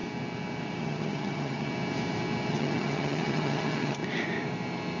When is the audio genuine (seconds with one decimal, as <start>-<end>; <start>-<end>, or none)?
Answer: 0.0-0.8; 1.7-2.5; 4.0-5.0